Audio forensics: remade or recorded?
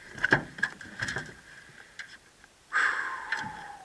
recorded